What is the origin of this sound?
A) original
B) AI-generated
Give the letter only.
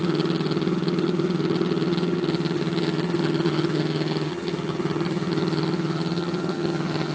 B